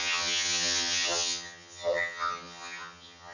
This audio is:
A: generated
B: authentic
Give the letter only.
A